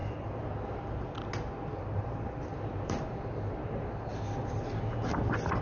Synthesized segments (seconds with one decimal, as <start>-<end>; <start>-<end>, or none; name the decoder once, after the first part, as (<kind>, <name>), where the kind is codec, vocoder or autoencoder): 1.8-4.1 (vocoder, BigVGAN v2)